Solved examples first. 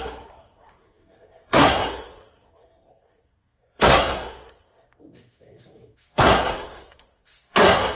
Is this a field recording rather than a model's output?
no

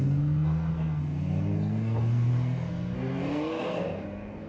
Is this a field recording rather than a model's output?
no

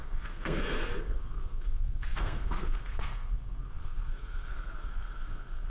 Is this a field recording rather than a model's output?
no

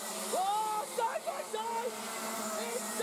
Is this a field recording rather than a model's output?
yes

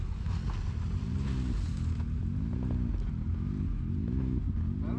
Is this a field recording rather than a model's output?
yes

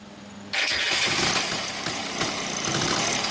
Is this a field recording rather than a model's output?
yes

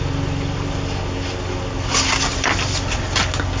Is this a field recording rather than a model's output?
yes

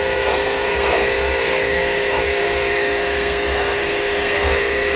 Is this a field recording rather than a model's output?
no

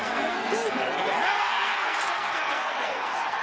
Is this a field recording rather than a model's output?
no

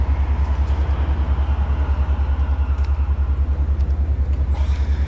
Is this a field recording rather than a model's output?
yes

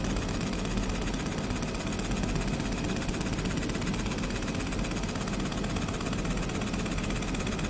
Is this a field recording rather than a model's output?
yes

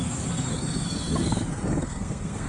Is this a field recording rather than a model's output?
no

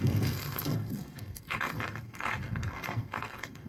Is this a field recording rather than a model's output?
no